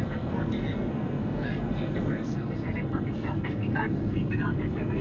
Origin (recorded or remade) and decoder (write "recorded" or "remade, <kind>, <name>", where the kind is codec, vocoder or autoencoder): remade, codec, SNAC